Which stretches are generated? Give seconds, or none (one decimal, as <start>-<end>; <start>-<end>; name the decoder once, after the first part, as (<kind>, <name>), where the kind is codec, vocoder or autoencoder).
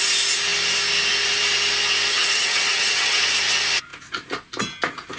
2.1-3.2 (vocoder, HiFi-GAN)